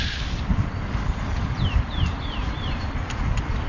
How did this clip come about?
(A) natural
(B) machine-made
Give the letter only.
A